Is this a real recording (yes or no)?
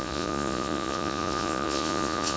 no